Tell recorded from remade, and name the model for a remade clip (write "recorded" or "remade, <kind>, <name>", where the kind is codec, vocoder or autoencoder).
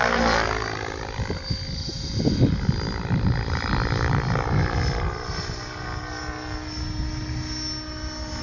recorded